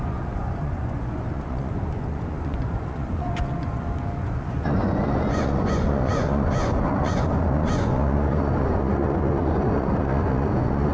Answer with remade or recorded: remade